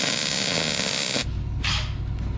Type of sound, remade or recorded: recorded